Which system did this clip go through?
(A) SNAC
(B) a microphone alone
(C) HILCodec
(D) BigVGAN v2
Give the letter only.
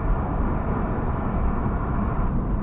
D